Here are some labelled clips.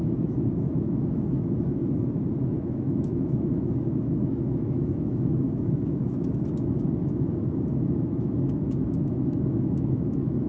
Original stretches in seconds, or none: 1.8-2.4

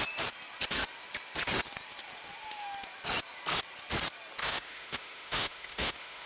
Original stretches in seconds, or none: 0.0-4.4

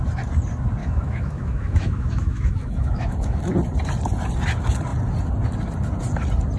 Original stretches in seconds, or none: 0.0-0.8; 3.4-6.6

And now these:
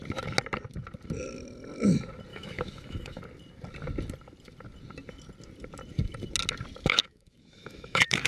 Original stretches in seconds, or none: 0.0-2.3; 3.2-6.8

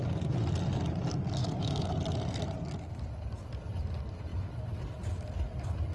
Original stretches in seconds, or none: 0.0-1.4; 1.9-5.9

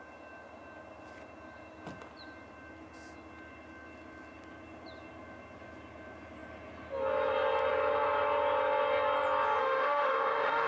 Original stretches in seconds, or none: 0.0-9.6

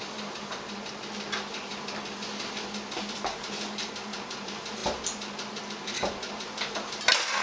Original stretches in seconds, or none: 0.0-7.4